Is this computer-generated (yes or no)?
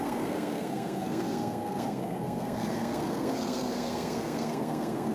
yes